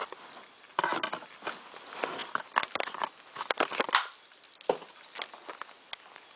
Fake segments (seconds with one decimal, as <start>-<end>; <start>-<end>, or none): none